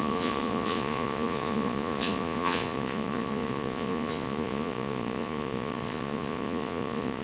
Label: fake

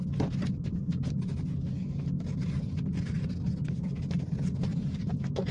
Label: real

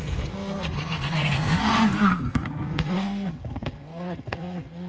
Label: fake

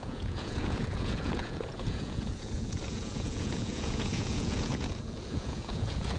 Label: fake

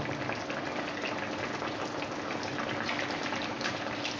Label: real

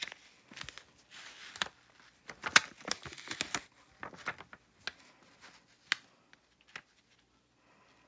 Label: real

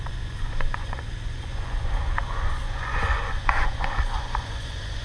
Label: fake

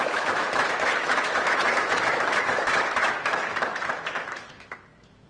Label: fake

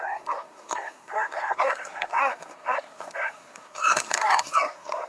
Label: fake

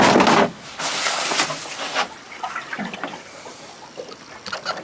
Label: real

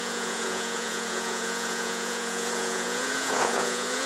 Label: fake